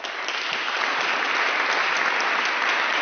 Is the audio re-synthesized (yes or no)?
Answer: no